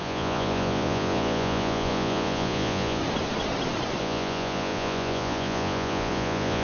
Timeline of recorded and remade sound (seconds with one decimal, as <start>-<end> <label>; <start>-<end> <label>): 0.0-3.0 remade; 3.0-4.0 recorded; 4.0-6.6 remade